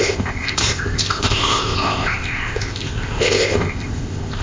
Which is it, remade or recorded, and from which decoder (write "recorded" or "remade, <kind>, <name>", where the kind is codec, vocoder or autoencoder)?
remade, codec, ZipCodec